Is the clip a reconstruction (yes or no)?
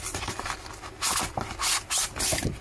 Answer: no